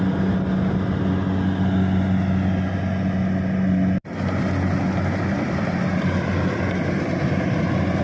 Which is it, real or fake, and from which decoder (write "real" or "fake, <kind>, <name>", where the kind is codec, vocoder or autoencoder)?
real